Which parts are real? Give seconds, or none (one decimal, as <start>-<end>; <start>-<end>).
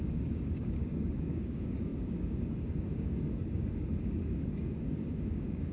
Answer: none